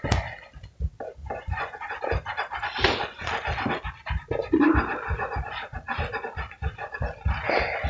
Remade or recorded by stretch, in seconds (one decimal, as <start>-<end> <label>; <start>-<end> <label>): 0.0-1.2 recorded; 1.2-2.0 remade; 2.0-7.9 recorded

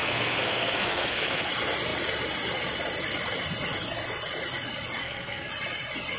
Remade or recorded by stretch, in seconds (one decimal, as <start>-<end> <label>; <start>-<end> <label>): 0.0-1.5 remade; 1.5-5.0 recorded; 5.0-5.5 remade; 5.5-6.2 recorded